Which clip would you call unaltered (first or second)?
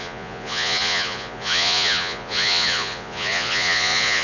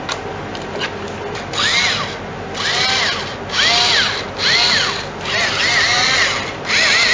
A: second